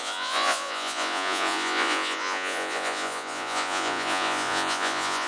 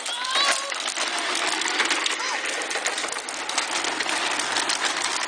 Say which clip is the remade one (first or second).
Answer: first